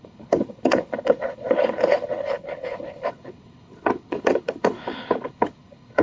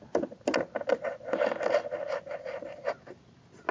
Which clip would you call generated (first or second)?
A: first